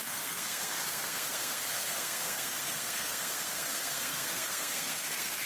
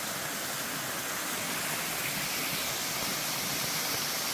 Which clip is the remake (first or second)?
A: first